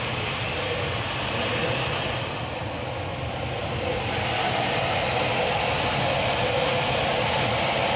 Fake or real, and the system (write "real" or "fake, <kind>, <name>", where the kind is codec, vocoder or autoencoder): real